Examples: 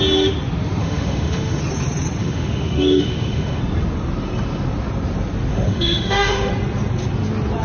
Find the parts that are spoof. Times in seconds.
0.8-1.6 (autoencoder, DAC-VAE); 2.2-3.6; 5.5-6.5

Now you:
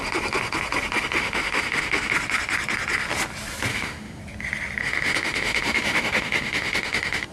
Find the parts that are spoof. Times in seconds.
1.2-2.1 (autoencoder, DAC-VAE); 3.7-4.2; 4.8-7.3

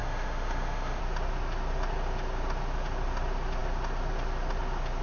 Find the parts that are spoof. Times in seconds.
0.0-1.0 (autoencoder, DAC-VAE)

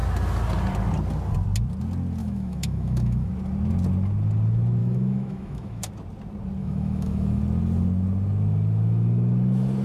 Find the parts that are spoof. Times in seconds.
2.2-3.3 (autoencoder, DAC-VAE); 4.8-5.9; 6.6-7.4